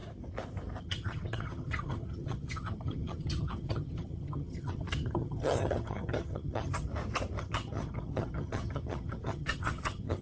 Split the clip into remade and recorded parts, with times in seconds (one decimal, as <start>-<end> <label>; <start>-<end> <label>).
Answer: 0.0-0.8 recorded; 0.8-6.9 remade; 6.9-7.4 recorded; 7.4-10.2 remade